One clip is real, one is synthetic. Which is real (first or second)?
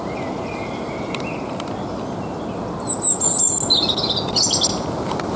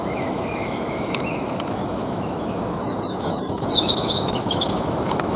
first